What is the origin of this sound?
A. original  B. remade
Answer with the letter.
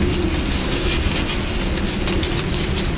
A